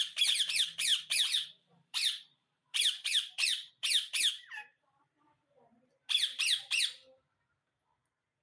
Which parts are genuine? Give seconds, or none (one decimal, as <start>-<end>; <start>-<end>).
0.0-0.9; 3.7-4.3; 5.0-8.4